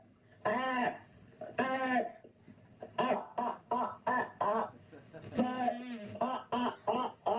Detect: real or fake real